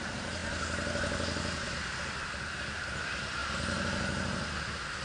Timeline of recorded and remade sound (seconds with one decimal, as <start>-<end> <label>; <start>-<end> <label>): 0.0-5.0 recorded